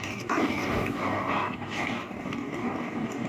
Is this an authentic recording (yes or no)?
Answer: no